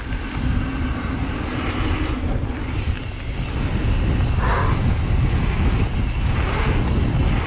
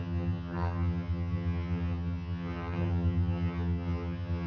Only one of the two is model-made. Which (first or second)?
second